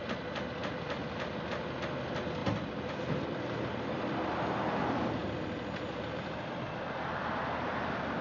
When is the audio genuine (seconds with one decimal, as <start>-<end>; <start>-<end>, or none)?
0.0-0.6; 1.3-2.4; 3.3-5.2; 7.4-8.2